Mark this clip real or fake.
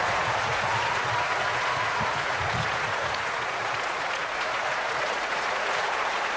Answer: fake